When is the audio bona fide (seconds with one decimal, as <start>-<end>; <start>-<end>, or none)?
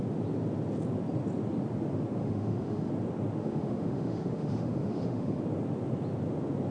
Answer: 0.0-2.2; 2.9-3.4; 5.4-6.7